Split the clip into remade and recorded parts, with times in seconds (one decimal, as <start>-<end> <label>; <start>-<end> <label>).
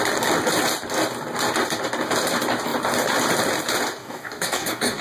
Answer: 0.0-4.0 recorded; 4.0-5.0 remade